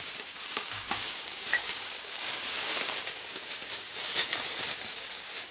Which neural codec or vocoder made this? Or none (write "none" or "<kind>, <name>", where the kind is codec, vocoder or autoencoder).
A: codec, DAC